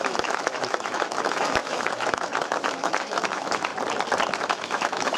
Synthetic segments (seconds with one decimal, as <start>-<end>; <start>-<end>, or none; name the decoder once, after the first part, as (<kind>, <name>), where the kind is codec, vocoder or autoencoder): 0.0-3.7 (autoencoder, DAC-VAE); 4.4-5.2